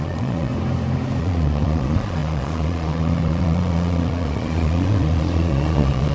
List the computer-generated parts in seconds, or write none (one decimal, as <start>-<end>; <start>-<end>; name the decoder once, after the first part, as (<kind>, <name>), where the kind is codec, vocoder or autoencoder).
0.0-0.5 (vocoder, Vocos); 1.2-6.1